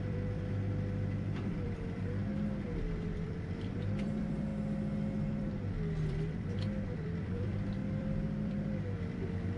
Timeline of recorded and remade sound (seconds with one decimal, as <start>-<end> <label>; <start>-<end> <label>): 0.0-2.2 remade; 2.2-2.8 recorded; 2.8-4.5 remade; 4.5-5.3 recorded; 5.3-9.6 remade